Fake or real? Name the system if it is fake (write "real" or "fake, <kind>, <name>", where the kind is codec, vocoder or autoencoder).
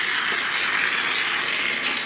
real